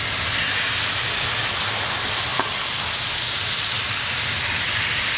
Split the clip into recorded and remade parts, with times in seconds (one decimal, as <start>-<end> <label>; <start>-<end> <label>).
0.0-5.2 recorded